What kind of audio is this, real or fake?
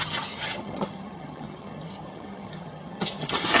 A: fake